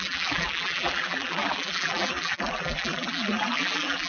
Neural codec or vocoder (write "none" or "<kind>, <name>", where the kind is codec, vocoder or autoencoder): vocoder, BigVGAN v2